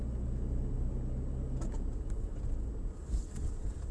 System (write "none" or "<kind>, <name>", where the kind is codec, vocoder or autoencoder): none